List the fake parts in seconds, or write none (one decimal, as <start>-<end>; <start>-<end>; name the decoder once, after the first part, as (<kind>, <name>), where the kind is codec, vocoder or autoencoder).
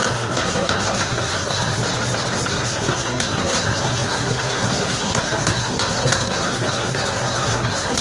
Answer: 0.0-1.8 (codec, SNAC); 2.5-8.0